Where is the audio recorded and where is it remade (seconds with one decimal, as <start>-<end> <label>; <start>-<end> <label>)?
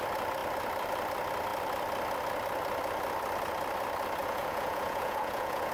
0.0-4.2 recorded; 4.2-5.7 remade